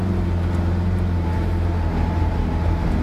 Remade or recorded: recorded